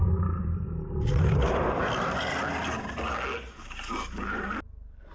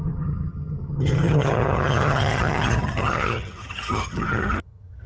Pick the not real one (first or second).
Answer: second